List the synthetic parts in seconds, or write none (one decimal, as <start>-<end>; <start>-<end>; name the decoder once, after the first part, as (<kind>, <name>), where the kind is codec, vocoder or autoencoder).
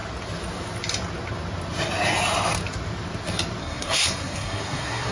3.6-5.1 (codec, SNAC)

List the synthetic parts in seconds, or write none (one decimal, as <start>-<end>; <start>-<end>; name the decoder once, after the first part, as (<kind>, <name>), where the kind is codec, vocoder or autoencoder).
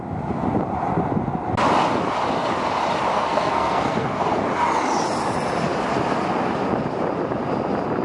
3.1-4.2 (codec, SNAC)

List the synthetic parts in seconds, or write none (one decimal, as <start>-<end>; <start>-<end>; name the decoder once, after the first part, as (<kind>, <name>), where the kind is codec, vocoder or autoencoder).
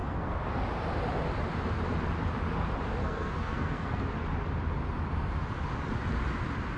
0.0-0.6 (codec, SNAC); 3.0-4.0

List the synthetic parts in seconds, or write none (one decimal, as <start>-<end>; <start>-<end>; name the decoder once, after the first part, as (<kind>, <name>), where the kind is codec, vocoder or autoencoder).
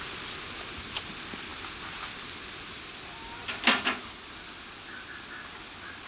none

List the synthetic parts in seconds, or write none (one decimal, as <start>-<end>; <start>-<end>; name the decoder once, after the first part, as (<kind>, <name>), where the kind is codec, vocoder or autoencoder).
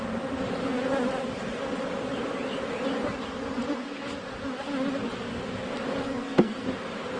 6.2-6.7 (codec, SNAC)